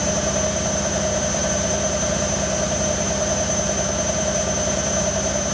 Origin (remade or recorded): remade